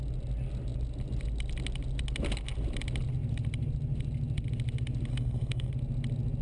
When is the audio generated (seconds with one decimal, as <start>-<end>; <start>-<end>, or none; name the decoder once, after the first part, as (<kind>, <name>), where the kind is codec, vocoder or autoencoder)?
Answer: 5.1-5.7 (codec, SNAC)